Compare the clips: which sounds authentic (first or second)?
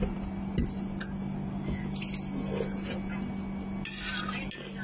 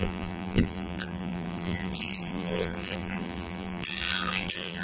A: first